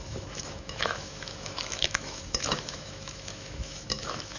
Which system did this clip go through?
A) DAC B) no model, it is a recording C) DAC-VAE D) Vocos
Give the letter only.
C